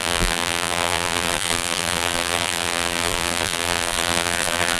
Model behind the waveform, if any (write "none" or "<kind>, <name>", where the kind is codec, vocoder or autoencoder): vocoder, BigVGAN v2